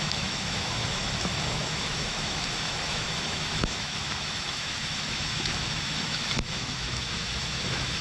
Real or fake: fake